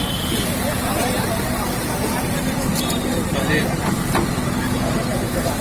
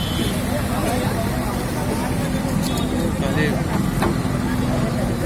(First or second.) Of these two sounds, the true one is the second